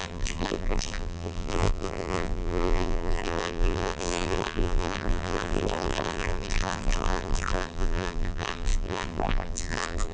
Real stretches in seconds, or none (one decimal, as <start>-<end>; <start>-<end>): none